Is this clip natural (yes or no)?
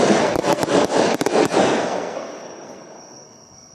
no